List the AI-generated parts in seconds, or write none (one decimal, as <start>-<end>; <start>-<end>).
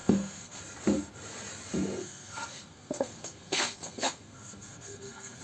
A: 0.0-0.6; 2.0-5.4